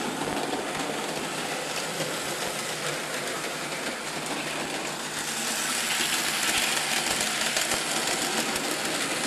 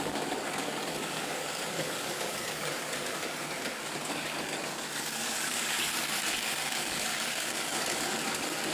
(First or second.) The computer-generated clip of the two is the second